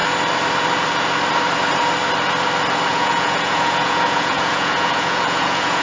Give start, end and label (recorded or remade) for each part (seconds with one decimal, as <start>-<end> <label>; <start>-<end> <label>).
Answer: 0.0-2.9 recorded; 2.9-5.8 remade